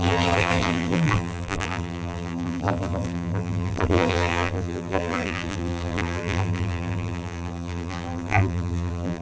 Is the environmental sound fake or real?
fake